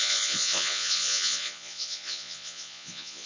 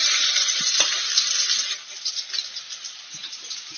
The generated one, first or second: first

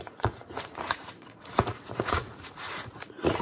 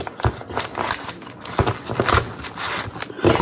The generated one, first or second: first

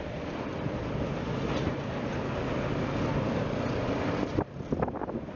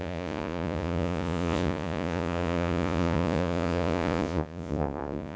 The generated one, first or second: second